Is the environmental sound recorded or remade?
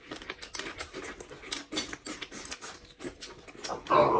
recorded